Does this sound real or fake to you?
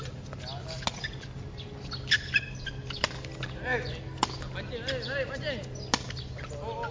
real